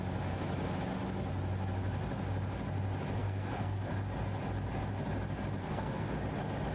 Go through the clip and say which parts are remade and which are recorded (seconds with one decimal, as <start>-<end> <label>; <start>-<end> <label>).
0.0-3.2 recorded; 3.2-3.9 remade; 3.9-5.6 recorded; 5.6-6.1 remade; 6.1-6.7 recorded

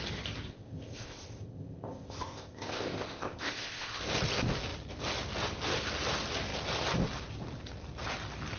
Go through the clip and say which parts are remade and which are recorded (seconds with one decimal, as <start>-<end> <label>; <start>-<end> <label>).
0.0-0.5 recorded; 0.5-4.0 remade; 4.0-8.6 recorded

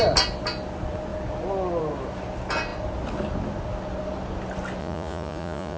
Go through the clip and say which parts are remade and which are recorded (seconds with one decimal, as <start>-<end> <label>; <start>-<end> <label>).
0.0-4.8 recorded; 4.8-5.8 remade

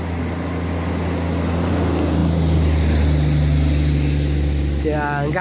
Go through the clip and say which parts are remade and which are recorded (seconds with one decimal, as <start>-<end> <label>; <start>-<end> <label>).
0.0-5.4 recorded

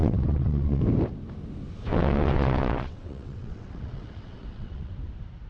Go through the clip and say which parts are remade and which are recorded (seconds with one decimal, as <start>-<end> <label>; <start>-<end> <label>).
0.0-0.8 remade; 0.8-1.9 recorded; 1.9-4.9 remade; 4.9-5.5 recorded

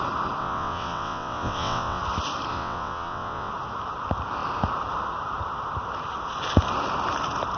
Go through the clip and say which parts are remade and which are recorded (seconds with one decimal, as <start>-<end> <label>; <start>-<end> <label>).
0.0-0.4 recorded; 0.4-2.0 remade; 2.0-2.5 recorded; 2.5-3.5 remade; 3.5-7.6 recorded

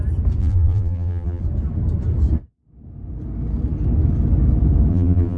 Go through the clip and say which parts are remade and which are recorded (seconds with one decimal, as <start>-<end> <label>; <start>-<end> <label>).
0.0-0.4 recorded; 0.4-1.4 remade; 1.4-4.9 recorded; 4.9-5.4 remade